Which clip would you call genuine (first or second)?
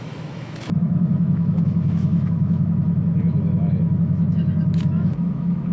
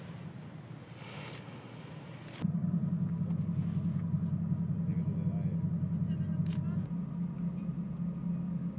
second